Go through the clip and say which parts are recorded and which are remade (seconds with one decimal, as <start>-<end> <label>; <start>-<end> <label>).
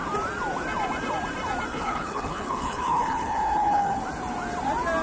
0.0-1.7 recorded; 1.7-4.0 remade; 4.0-5.0 recorded